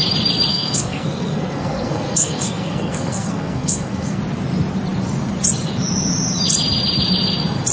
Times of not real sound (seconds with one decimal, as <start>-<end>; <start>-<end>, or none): 0.5-4.2